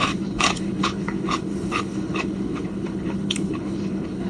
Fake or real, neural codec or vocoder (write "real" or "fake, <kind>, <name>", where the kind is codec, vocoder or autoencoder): fake, codec, HILCodec